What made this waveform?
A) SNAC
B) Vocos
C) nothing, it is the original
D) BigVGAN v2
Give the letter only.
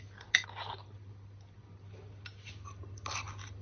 C